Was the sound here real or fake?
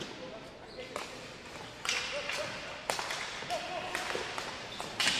real